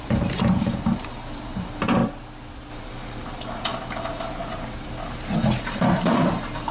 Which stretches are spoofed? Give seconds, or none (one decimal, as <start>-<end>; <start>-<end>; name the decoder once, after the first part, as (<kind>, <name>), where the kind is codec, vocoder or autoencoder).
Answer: 0.0-2.0 (vocoder, BigVGAN v2); 2.7-6.7

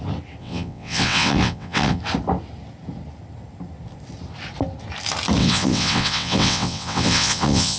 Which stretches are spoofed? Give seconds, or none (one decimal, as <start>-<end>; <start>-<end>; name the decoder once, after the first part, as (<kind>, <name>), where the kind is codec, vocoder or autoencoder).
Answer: 0.4-2.0 (vocoder, WaveNeXt); 5.4-7.8

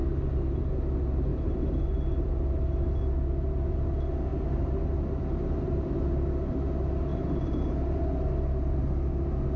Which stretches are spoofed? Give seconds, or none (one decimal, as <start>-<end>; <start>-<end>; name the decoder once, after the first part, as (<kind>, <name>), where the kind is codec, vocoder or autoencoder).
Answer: 1.3-1.8 (vocoder, BigVGAN v2); 4.3-6.0; 7.1-8.0

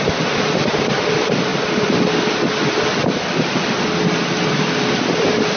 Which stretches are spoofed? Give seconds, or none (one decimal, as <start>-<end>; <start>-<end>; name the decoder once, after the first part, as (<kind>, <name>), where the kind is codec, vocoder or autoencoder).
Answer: none